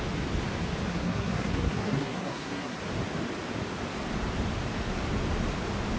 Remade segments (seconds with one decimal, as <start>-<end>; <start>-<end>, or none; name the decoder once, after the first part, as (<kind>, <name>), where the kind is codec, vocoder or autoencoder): 0.9-2.8 (codec, SNAC)